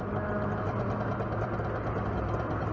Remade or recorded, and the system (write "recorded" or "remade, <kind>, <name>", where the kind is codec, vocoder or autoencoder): recorded